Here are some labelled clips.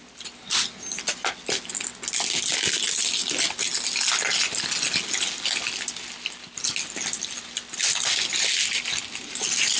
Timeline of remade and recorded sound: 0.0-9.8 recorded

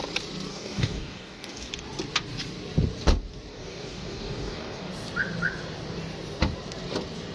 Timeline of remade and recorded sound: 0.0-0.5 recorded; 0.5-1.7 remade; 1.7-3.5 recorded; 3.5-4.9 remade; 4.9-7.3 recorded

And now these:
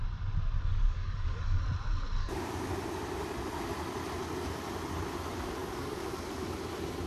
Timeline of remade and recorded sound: 0.0-0.7 recorded; 0.7-1.6 remade; 1.6-2.2 recorded; 2.2-2.7 remade; 2.7-5.6 recorded; 5.6-6.4 remade; 6.4-7.1 recorded

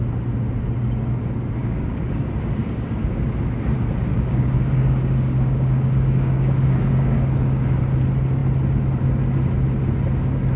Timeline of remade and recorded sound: 0.0-1.6 recorded; 1.6-2.2 remade; 2.2-2.6 recorded; 2.6-3.3 remade; 3.3-4.1 recorded; 4.1-7.8 remade; 7.8-10.6 recorded

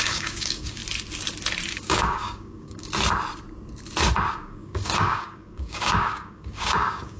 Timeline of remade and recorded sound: 0.0-0.8 remade; 0.8-1.7 recorded; 1.7-2.9 remade; 2.9-4.3 recorded; 4.3-7.2 remade